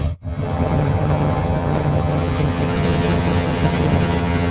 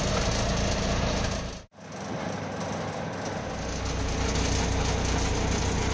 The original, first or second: second